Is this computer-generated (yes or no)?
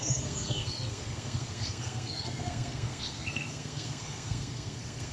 yes